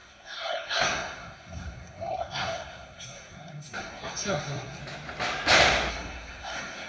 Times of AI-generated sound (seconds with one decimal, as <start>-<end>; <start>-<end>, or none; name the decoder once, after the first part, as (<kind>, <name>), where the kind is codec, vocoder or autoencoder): 0.0-4.8 (codec, SNAC); 5.9-6.9